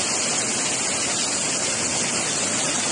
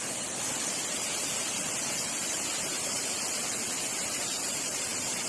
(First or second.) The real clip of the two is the first